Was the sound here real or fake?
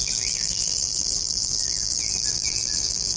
fake